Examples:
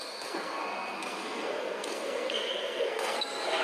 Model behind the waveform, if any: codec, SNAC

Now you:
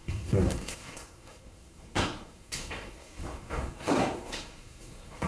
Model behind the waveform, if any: codec, SNAC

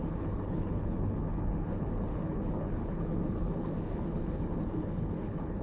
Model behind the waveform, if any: codec, HILCodec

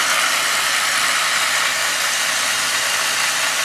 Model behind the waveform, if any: vocoder, BigVGAN v2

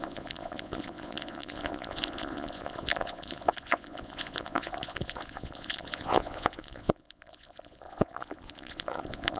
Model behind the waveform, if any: vocoder, Vocos